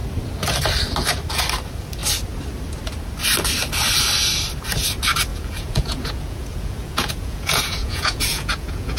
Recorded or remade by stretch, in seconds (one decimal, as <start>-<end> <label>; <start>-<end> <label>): 0.0-5.3 recorded; 5.3-9.0 remade